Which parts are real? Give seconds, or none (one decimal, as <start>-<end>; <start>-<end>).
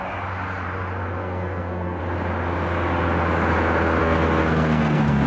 0.0-1.2; 2.0-4.0